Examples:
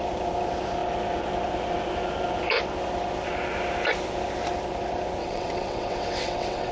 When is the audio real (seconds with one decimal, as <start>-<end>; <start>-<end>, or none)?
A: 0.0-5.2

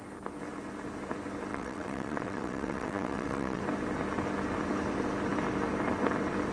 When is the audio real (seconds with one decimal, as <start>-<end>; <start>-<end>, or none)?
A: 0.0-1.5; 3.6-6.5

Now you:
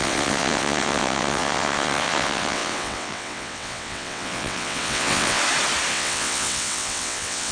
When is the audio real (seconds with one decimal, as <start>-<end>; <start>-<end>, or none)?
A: 5.4-5.9

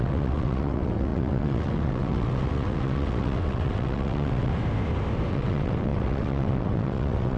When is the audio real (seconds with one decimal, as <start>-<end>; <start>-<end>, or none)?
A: 4.5-5.3

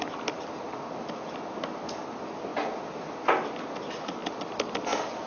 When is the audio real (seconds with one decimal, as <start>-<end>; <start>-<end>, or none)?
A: 0.0-5.3

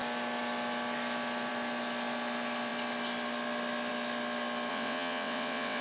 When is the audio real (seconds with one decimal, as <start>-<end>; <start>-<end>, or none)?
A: 0.0-4.7

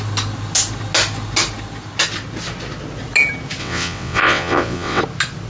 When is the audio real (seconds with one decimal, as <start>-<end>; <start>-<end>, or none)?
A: 0.0-3.6; 5.0-5.5

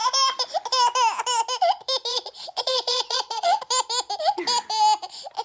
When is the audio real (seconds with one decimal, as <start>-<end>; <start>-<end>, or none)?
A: 0.0-2.1; 3.6-5.4